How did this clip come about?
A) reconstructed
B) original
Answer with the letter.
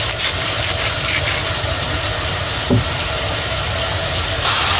B